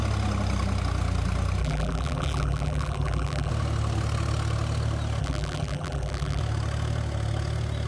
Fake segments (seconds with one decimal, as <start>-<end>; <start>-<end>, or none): 1.6-3.5; 5.2-6.4